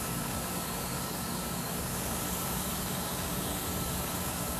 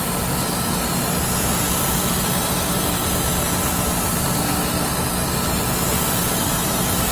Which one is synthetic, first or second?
first